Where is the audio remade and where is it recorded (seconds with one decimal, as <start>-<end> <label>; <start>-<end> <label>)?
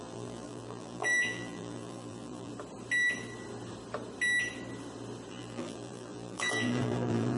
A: 0.0-2.5 remade; 2.5-5.3 recorded; 5.3-7.4 remade